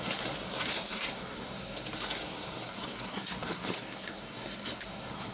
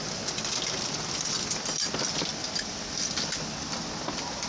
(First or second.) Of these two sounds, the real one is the second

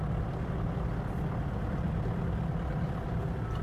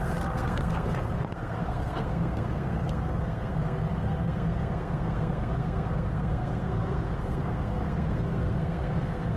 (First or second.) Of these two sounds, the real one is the first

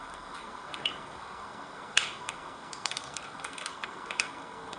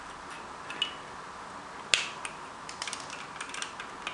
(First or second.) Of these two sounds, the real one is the second